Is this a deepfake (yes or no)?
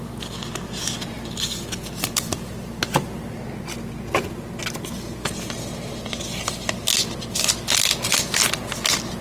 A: no